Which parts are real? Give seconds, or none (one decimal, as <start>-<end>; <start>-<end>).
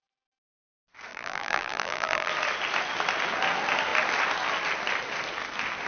0.0-1.1; 2.3-5.9